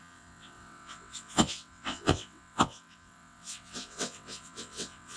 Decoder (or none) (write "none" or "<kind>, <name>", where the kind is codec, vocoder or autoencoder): vocoder, WaveNeXt